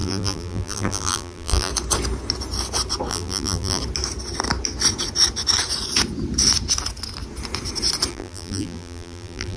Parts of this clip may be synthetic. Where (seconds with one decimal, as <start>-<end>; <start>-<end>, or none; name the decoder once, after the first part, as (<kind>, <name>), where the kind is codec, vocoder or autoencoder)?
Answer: 0.0-1.7 (vocoder, BigVGAN v2); 3.1-3.8; 8.1-9.6